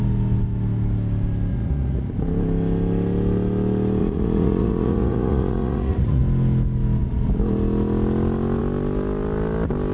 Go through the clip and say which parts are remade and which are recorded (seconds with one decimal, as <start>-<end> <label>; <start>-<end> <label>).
0.0-1.5 recorded; 1.5-2.1 remade; 2.1-4.0 recorded; 4.0-6.2 remade; 6.2-9.9 recorded